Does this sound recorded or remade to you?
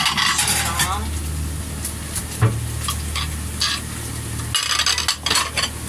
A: recorded